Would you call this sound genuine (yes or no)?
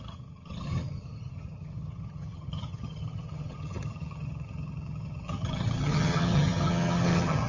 no